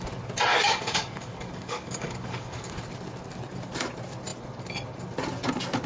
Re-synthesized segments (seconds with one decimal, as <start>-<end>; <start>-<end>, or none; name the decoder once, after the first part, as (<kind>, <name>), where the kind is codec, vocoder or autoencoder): 0.5-2.7 (codec, DAC)